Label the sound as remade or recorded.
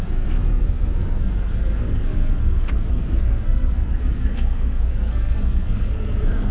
remade